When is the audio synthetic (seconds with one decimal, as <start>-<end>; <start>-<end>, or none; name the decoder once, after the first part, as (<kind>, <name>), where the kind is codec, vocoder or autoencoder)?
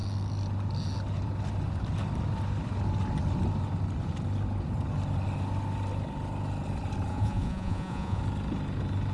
7.1-8.2 (vocoder, Vocos)